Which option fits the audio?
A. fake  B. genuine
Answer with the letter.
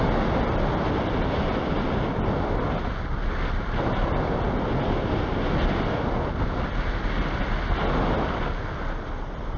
B